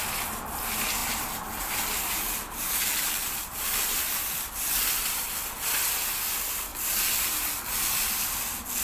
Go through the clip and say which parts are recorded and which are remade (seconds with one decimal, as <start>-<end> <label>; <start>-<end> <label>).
0.0-1.0 recorded; 1.0-4.2 remade; 4.2-6.7 recorded; 6.7-8.1 remade; 8.1-8.8 recorded